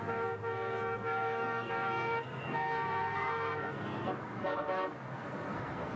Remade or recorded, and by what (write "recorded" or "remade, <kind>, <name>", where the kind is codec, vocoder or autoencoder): remade, codec, SNAC